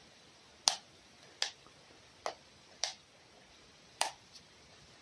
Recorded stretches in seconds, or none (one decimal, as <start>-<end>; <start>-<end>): 0.5-2.3; 2.9-3.5